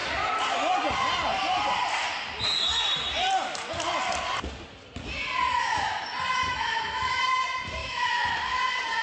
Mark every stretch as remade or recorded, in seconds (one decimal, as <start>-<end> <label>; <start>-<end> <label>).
0.0-6.5 recorded; 6.5-7.2 remade; 7.2-7.8 recorded; 7.8-8.6 remade; 8.6-9.0 recorded